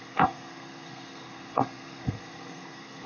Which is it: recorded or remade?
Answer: remade